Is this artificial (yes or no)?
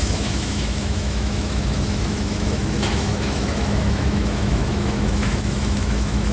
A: yes